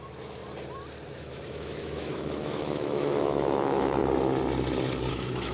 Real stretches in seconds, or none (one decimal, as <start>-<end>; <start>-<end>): 0.4-1.1; 4.0-5.1